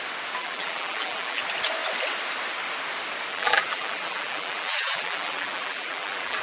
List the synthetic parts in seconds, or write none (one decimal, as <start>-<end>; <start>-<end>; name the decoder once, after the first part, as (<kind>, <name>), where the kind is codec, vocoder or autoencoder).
0.4-1.4 (vocoder, BigVGAN v2); 3.3-6.4